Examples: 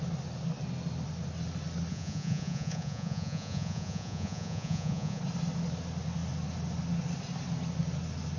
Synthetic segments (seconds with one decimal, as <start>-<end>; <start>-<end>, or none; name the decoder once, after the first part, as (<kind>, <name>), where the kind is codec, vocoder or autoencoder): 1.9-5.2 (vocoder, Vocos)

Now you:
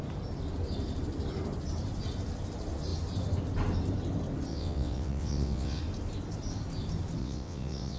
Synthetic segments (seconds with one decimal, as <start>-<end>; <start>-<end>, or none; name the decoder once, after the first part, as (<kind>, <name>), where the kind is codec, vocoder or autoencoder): 4.5-5.8 (vocoder, WaveNeXt); 7.2-8.0

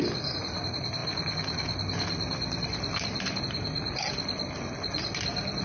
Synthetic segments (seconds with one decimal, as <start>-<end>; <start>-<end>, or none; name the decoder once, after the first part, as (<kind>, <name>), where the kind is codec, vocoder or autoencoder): none

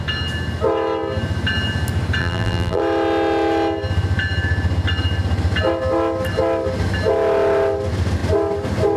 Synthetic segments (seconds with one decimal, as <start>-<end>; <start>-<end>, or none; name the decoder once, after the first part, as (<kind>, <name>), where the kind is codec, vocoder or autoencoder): 2.2-2.8 (vocoder, BigVGAN v2)